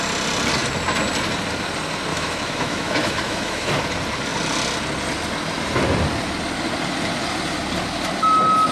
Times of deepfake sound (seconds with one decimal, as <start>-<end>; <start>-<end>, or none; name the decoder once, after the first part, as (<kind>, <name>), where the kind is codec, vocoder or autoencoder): 2.1-3.7 (autoencoder, DAC-VAE)